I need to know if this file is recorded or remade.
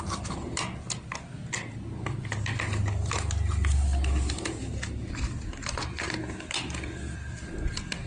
recorded